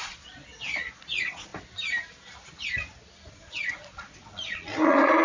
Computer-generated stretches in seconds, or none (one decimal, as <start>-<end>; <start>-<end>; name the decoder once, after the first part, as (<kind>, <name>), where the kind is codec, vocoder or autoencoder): 0.0-1.5 (vocoder, Vocos); 3.3-5.2